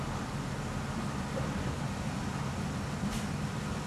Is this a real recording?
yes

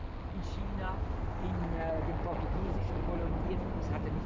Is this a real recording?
yes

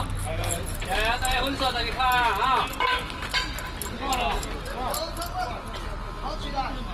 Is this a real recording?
yes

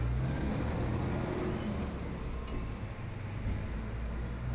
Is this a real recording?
yes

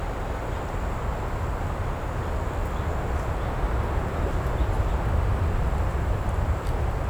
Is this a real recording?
yes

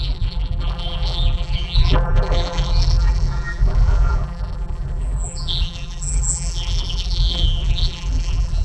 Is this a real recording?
no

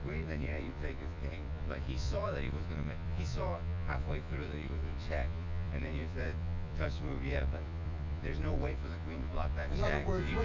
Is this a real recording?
no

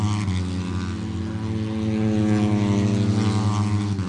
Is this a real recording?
yes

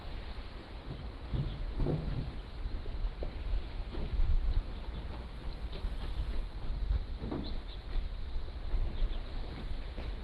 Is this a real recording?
yes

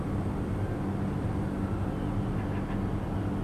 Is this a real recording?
yes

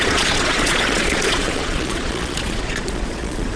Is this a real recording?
no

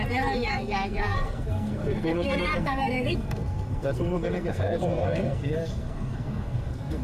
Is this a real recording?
no